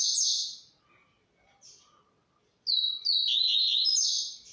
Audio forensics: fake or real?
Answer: real